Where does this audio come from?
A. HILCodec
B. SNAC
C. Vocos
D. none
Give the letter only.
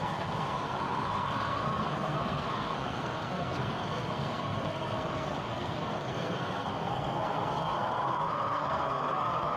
B